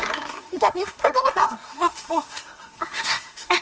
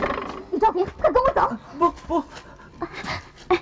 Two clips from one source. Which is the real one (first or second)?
second